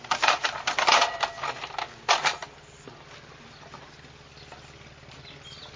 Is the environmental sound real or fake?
real